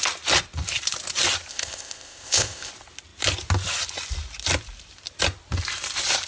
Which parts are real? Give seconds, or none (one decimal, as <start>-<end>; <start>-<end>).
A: 0.0-1.5; 2.7-6.3